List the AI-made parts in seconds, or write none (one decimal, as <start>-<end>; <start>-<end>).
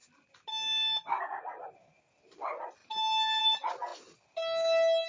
none